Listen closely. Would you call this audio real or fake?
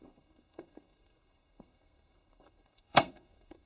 fake